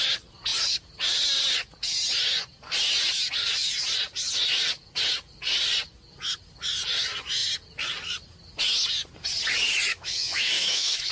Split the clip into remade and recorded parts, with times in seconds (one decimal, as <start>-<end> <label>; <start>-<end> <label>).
0.0-9.9 recorded; 9.9-11.1 remade